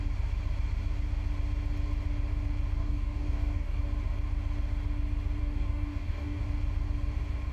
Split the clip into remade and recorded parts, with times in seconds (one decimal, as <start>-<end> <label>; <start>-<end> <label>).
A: 0.0-2.8 recorded; 2.8-3.8 remade; 3.8-5.4 recorded; 5.4-6.4 remade; 6.4-7.5 recorded